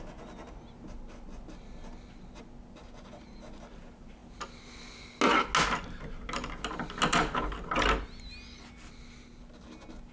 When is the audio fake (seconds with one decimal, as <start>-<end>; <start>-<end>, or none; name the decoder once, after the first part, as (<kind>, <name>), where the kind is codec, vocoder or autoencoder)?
none